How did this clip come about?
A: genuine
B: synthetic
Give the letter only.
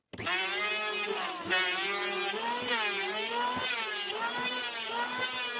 A